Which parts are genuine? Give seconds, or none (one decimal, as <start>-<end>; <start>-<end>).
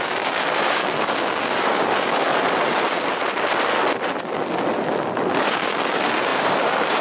2.3-5.0